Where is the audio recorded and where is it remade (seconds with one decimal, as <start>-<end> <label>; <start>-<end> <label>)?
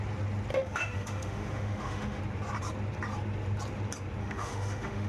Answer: 0.0-0.5 recorded; 0.5-2.2 remade; 2.2-4.2 recorded; 4.2-5.1 remade